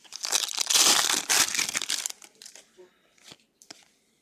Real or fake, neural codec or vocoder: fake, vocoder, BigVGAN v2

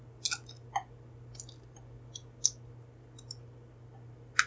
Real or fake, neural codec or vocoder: real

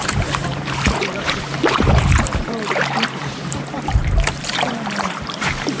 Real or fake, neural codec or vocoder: fake, vocoder, BigVGAN v2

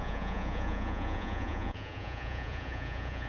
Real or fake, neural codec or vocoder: fake, vocoder, Vocos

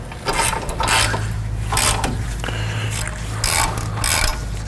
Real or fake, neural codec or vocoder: real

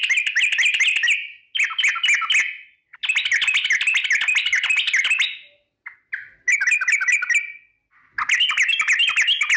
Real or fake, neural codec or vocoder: real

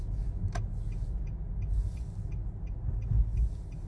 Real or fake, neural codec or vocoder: real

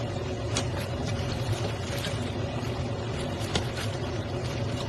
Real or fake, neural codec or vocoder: real